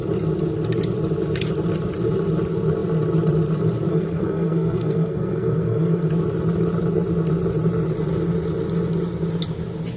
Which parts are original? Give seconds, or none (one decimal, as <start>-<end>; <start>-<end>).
0.0-3.9; 6.1-10.0